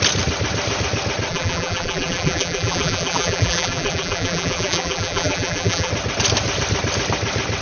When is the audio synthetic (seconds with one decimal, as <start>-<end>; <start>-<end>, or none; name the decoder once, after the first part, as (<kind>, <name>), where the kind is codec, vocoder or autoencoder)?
1.3-5.9 (vocoder, BigVGAN v2)